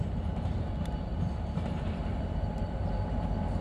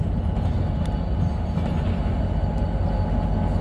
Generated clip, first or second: first